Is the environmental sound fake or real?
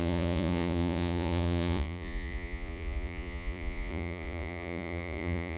fake